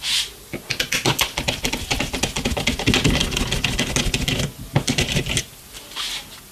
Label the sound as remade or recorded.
recorded